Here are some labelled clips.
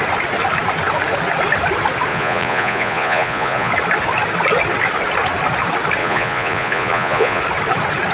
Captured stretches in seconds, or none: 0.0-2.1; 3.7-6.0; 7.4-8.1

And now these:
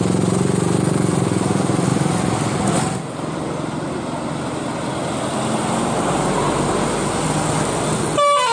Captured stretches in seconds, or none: 0.0-8.5

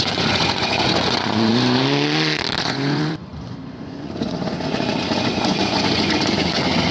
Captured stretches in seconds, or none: 1.5-2.6